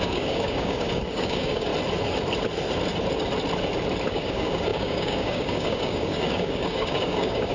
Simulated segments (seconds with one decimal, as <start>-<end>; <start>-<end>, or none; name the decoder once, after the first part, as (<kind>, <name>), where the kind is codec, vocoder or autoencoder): 0.0-1.7 (codec, DAC); 4.1-7.5

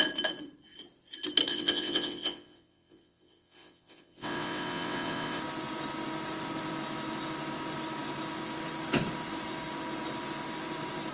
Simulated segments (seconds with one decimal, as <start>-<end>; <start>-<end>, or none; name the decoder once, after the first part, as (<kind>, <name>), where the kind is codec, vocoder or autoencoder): 1.5-5.4 (vocoder, WaveNeXt)

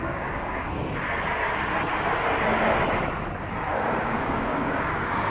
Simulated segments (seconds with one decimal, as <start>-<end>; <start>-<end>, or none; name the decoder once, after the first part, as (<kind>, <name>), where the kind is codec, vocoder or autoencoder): 0.0-0.8 (codec, DAC); 4.0-5.3

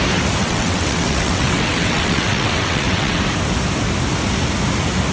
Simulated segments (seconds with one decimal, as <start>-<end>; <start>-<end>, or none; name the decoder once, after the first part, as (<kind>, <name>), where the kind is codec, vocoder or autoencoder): 0.4-3.2 (vocoder, WaveNeXt)